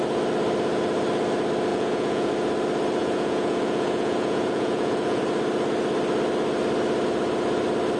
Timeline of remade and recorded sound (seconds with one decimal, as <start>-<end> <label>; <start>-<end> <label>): 0.0-1.7 recorded; 1.7-2.3 remade; 2.3-3.0 recorded; 3.0-5.2 remade; 5.2-8.0 recorded